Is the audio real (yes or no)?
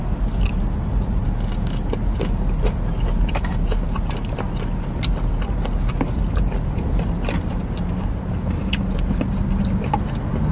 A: yes